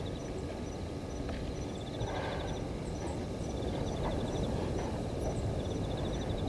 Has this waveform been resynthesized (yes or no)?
no